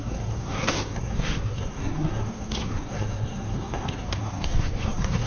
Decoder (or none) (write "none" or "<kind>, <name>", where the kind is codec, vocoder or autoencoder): codec, SNAC